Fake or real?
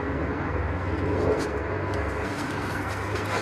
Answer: fake